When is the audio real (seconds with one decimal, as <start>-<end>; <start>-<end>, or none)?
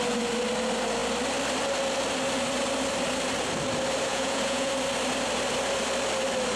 0.0-4.1; 4.7-6.6